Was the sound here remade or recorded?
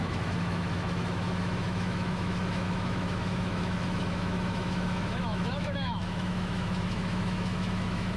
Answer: remade